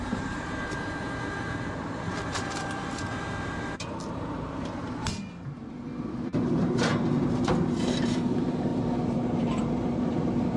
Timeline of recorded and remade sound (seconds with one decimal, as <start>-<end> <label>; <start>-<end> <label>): 0.0-5.1 remade; 5.1-6.0 recorded; 6.0-10.6 remade